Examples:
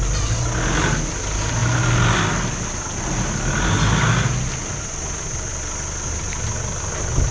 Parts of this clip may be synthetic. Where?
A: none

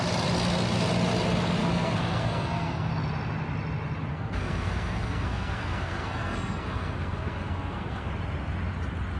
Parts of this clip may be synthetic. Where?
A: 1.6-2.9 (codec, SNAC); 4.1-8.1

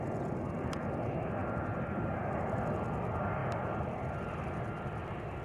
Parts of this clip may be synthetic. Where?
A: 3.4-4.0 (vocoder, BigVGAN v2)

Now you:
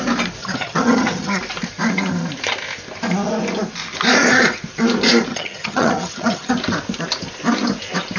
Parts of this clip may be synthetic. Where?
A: 0.4-1.4 (vocoder, HiFi-GAN); 5.3-6.5

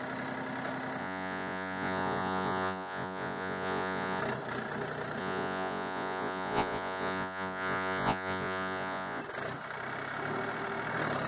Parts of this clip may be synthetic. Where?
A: 1.0-4.2 (vocoder, Vocos); 5.2-9.2

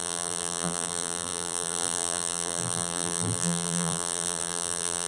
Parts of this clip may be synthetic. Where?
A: 0.0-5.1 (vocoder, BigVGAN v2)

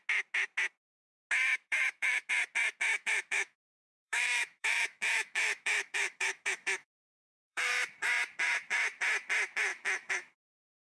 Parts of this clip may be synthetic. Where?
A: 1.4-2.3 (autoencoder, DAC-VAE); 2.9-7.7; 9.7-10.4